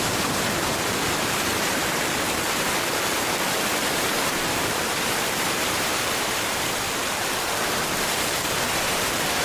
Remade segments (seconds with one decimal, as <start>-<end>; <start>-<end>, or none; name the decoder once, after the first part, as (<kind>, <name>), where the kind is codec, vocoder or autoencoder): 0.0-9.4 (vocoder, BigVGAN v2)